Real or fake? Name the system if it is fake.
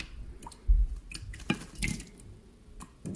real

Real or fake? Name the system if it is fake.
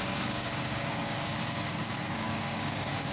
fake, codec, DAC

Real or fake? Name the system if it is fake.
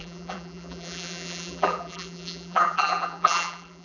fake, vocoder, BigVGAN v2